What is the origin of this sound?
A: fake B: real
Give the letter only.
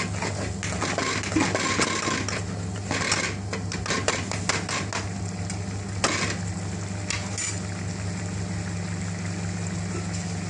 B